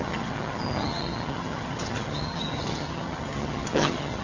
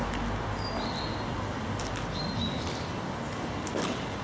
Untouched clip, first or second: second